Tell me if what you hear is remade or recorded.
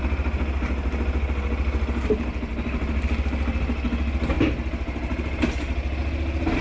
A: recorded